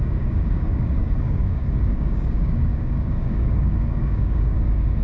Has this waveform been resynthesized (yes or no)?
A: yes